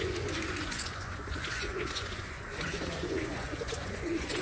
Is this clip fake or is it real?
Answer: fake